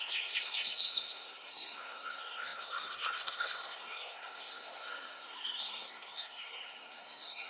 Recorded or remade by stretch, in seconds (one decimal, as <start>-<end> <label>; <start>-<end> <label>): 0.0-7.5 remade